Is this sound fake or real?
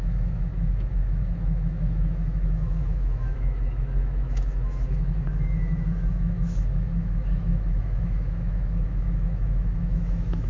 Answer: fake